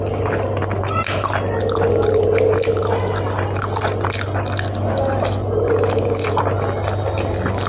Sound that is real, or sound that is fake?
real